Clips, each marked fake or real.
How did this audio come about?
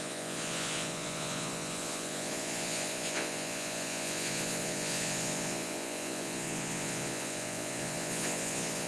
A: fake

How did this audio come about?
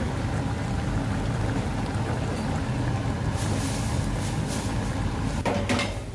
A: real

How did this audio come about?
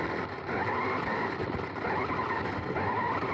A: real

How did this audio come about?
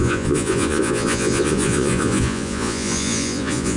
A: fake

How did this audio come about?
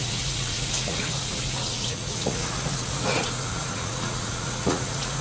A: fake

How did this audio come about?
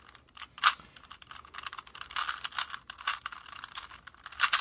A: real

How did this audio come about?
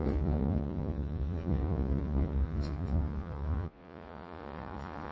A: fake